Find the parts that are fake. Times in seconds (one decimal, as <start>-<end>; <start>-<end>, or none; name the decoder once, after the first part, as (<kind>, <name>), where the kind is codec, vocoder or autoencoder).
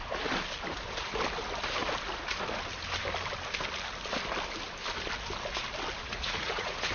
6.0-6.9 (vocoder, Vocos)